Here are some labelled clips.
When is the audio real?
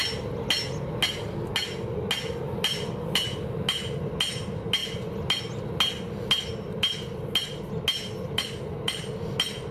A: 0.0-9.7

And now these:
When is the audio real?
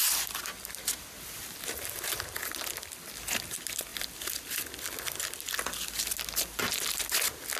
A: 0.0-7.6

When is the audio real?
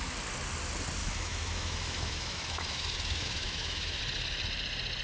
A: 0.0-1.0; 4.0-5.0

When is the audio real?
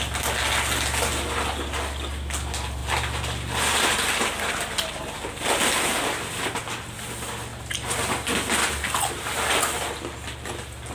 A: 0.0-2.8; 5.4-7.5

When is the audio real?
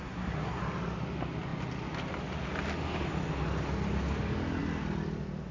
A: 0.6-5.5